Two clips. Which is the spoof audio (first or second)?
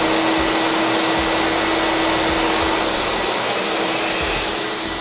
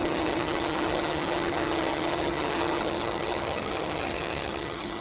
second